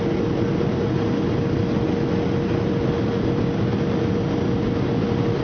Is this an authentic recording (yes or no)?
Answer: yes